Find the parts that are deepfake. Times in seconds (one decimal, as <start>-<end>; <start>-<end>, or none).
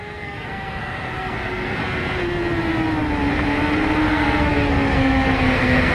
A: 0.0-1.8; 4.1-5.9